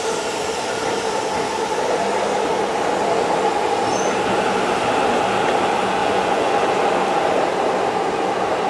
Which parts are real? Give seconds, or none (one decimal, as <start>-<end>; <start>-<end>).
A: 0.0-6.0; 6.7-8.7